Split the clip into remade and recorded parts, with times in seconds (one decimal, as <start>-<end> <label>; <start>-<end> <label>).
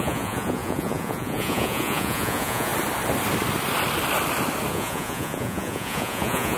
0.0-2.7 remade; 2.7-4.7 recorded; 4.7-6.6 remade